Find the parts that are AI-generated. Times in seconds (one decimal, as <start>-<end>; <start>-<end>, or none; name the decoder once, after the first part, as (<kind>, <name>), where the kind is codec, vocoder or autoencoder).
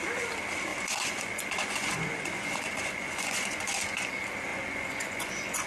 0.7-4.1 (vocoder, Vocos); 4.5-5.7